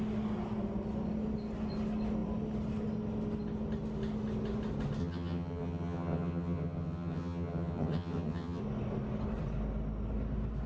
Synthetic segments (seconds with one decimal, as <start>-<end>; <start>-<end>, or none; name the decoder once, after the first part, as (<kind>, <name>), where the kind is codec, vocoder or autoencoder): 5.0-8.6 (vocoder, HiFi-GAN)